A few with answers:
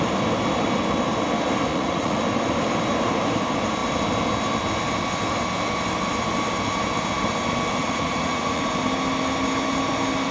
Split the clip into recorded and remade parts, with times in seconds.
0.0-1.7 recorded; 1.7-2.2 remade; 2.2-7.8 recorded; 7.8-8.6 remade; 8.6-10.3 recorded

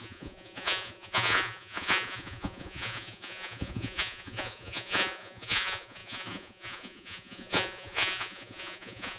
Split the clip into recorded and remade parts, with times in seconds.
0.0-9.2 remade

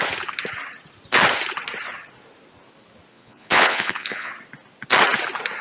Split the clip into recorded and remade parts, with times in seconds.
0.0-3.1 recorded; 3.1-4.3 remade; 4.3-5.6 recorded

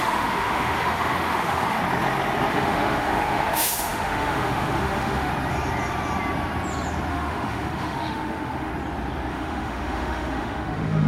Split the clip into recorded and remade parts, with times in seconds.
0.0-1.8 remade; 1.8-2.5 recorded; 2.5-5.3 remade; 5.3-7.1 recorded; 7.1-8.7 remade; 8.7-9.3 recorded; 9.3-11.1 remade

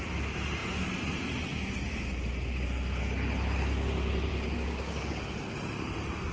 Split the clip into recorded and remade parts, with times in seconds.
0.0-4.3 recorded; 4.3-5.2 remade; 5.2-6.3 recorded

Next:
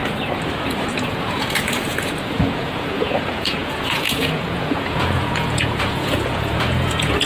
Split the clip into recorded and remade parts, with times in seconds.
0.0-0.9 recorded; 0.9-7.3 remade

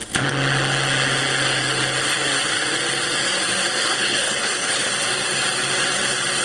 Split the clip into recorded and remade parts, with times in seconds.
0.0-3.8 recorded; 3.8-4.9 remade; 4.9-6.4 recorded